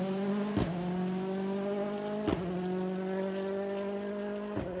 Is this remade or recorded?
recorded